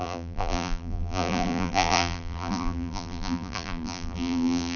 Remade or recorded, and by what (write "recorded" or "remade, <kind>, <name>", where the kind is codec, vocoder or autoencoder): remade, vocoder, BigVGAN v2